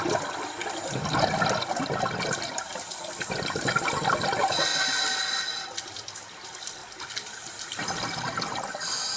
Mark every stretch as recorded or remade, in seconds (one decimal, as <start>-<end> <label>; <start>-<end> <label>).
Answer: 0.0-9.2 recorded